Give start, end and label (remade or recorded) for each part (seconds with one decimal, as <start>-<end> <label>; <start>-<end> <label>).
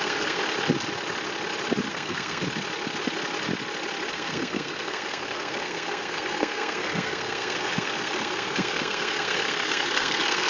0.0-0.4 remade; 0.4-1.9 recorded; 1.9-2.4 remade; 2.4-4.1 recorded; 4.1-10.5 remade